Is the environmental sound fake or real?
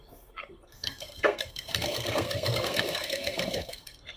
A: fake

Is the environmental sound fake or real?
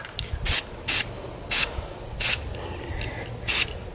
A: real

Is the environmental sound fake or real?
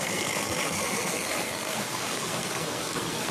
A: fake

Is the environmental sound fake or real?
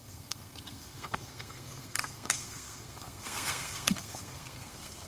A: fake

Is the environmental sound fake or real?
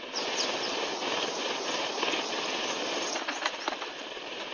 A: real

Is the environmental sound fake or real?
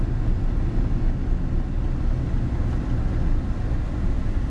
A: real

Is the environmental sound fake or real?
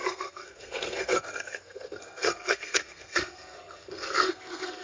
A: fake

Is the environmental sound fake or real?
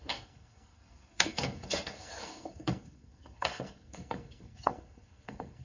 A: fake